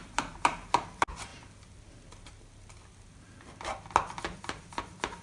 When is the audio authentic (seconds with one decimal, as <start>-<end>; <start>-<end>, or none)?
1.3-4.4